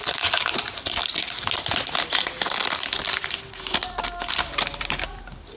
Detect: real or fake real